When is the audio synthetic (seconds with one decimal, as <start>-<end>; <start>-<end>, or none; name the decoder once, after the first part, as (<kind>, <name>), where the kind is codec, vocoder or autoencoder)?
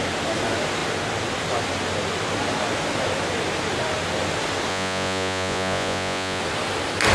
4.7-6.4 (vocoder, Vocos)